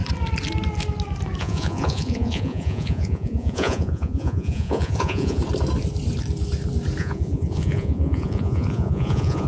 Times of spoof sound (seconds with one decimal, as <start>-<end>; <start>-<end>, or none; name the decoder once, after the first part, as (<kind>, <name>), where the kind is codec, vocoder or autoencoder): 1.4-5.4 (vocoder, Vocos); 7.0-9.5